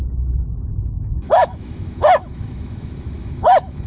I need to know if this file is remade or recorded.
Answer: remade